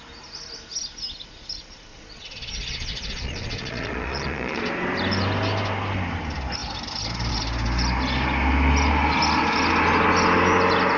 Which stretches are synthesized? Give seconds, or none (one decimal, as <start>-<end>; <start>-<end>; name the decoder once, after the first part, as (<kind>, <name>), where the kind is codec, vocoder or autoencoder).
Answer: 1.9-4.6 (vocoder, Vocos)